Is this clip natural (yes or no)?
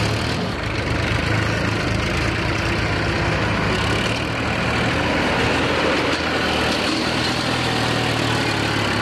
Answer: yes